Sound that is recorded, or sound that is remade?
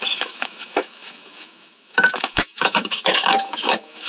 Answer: remade